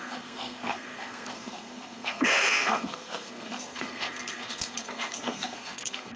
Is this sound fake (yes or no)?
yes